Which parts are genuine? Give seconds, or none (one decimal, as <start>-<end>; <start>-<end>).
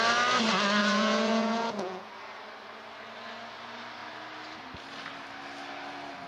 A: 0.0-0.8; 2.1-6.3